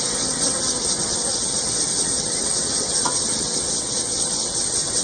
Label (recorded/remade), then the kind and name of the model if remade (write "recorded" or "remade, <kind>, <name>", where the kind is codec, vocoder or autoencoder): remade, vocoder, WaveNeXt